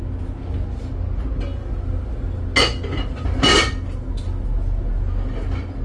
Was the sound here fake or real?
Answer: real